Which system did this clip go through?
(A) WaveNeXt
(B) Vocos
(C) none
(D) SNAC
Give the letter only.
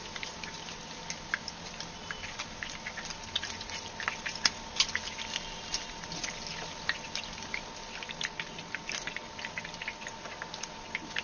C